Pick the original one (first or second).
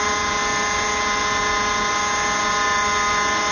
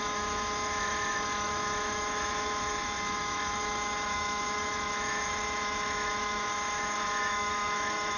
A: first